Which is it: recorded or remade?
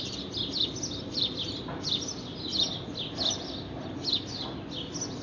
recorded